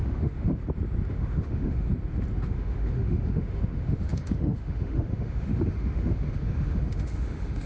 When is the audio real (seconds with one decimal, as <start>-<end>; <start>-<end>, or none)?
0.6-1.1; 1.9-2.5